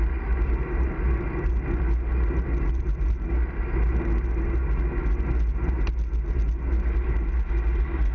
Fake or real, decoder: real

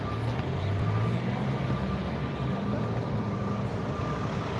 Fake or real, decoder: real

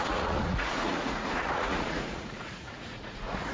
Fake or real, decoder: fake, vocoder, Vocos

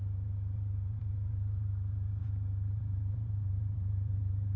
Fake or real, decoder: fake, vocoder, BigVGAN v2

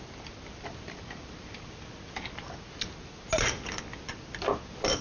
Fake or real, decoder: real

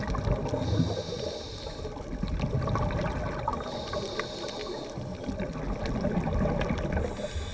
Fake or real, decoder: real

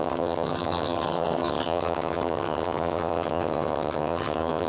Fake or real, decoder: fake, vocoder, HiFi-GAN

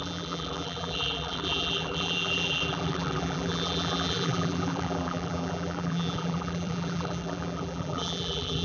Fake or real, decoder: fake, vocoder, BigVGAN v2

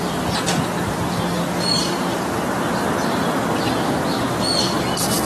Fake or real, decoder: real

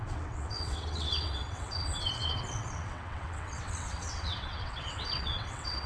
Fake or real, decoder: fake, vocoder, WaveNeXt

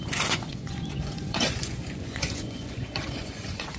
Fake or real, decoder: fake, vocoder, Vocos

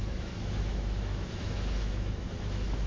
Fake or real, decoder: fake, autoencoder, DAC-VAE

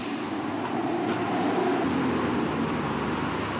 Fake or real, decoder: real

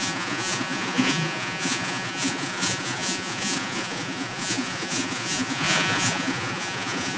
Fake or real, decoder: fake, vocoder, Vocos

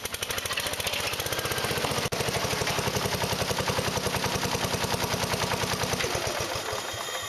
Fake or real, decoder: real